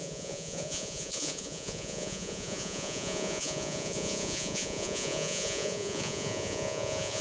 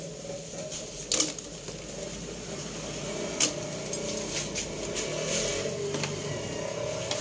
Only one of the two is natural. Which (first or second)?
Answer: second